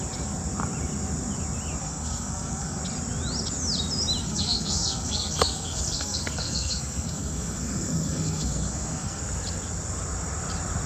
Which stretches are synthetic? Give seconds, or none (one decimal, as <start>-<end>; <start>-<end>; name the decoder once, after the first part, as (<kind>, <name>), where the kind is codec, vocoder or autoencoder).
1.8-2.8 (codec, SNAC); 4.2-9.2